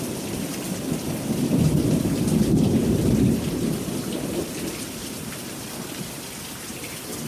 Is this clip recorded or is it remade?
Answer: recorded